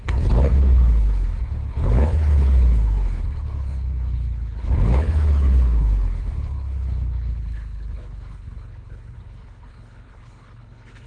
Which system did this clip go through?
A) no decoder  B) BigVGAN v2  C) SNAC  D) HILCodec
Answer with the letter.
D